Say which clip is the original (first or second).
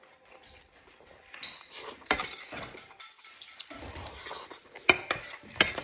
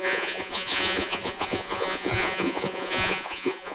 first